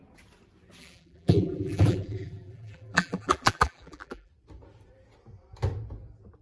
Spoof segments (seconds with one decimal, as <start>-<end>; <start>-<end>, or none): 0.8-4.3